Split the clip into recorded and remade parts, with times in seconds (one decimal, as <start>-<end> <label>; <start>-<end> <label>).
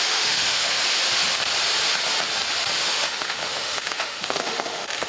0.0-0.8 remade; 0.8-2.8 recorded; 2.8-5.1 remade